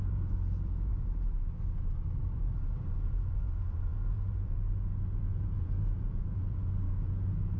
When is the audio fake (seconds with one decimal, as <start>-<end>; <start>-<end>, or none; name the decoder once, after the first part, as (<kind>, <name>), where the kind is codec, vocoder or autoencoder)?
0.0-0.9 (vocoder, Vocos); 3.0-7.6

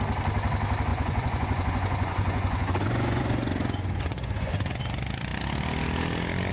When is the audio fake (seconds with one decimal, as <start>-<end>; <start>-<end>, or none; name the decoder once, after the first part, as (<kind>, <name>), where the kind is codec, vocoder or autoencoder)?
0.9-4.8 (vocoder, Vocos)

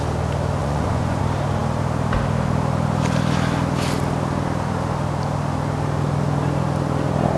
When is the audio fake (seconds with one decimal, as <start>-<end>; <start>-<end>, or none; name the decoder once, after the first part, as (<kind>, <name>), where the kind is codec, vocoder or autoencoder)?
0.6-1.2 (vocoder, Vocos)

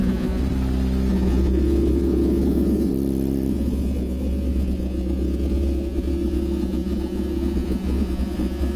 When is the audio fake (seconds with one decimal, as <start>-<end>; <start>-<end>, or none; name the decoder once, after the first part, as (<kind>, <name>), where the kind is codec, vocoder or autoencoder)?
0.0-0.4 (vocoder, Vocos); 1.1-2.9; 3.5-8.8

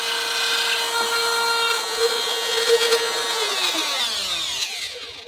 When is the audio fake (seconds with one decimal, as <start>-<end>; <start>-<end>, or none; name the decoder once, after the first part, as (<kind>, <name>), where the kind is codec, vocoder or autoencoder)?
1.7-4.0 (vocoder, Vocos); 4.6-5.3

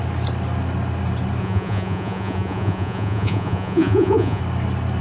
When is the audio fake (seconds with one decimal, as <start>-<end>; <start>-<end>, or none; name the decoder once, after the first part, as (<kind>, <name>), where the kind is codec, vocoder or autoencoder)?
1.4-4.4 (vocoder, Vocos)

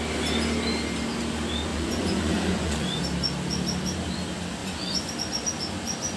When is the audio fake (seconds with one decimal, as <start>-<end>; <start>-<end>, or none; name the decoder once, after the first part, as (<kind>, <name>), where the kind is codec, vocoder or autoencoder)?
1.7-3.0 (vocoder, Vocos); 4.6-5.1